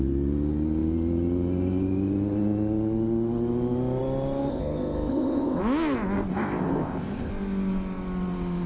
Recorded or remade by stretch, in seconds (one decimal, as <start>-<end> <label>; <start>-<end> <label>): 0.0-4.5 recorded; 4.5-5.6 remade; 5.6-6.3 recorded; 6.3-7.3 remade; 7.3-8.7 recorded